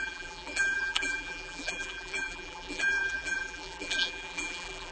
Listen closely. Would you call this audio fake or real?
fake